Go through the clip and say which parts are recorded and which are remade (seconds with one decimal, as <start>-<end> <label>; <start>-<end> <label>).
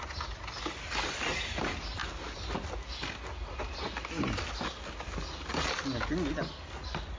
0.0-7.2 recorded